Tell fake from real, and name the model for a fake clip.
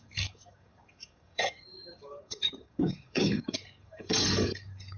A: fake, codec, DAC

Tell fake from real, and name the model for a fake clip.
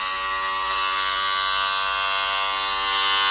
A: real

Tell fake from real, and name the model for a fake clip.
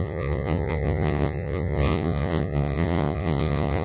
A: fake, vocoder, Vocos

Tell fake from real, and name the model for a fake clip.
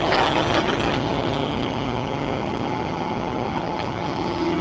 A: fake, vocoder, HiFi-GAN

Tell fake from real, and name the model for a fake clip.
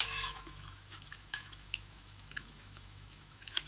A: fake, autoencoder, DAC-VAE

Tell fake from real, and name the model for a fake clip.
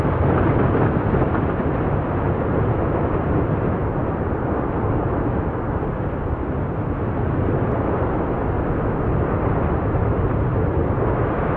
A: real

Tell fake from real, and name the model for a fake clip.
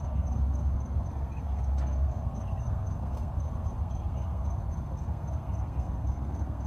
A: fake, codec, SNAC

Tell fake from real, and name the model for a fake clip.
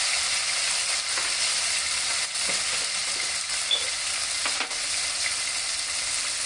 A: real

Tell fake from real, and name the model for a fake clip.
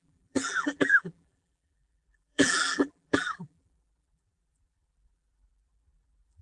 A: fake, vocoder, BigVGAN v2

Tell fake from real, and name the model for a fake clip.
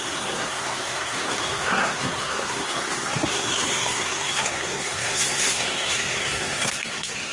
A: fake, codec, SNAC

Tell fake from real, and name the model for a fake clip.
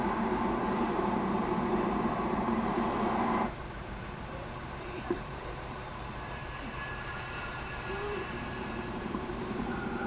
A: fake, vocoder, BigVGAN v2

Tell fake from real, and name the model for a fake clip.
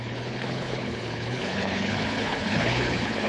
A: fake, codec, HILCodec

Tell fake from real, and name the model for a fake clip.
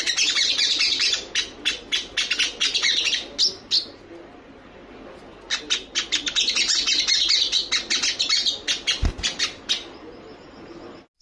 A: real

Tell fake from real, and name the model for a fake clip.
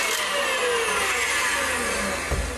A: real